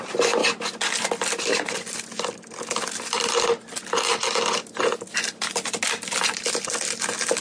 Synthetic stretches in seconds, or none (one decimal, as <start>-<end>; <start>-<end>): none